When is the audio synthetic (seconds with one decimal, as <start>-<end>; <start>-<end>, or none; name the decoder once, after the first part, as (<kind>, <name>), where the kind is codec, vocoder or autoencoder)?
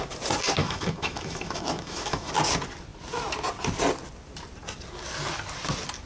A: 0.6-2.3 (autoencoder, DAC-VAE)